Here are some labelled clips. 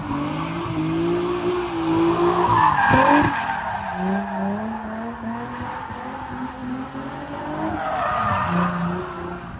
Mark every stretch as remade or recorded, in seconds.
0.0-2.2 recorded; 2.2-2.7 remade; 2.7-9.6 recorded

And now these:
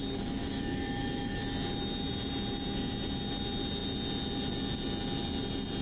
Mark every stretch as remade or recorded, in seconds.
0.0-0.4 recorded; 0.4-1.5 remade; 1.5-5.8 recorded

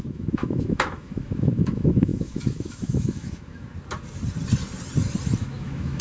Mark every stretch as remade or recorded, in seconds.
0.0-3.7 remade; 3.7-5.4 recorded; 5.4-6.0 remade

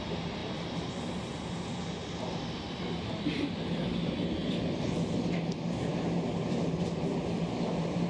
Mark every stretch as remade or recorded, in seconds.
0.0-8.1 recorded

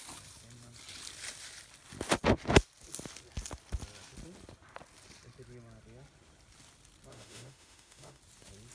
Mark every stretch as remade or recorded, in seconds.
0.0-7.1 recorded; 7.1-8.2 remade; 8.2-8.7 recorded

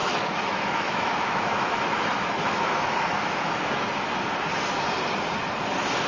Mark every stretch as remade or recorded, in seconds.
0.0-3.7 remade; 3.7-6.1 recorded

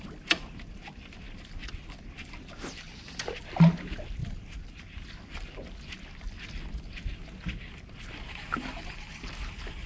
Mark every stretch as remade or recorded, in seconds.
0.0-9.9 recorded